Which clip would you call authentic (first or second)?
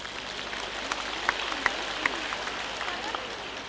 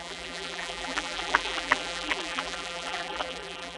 first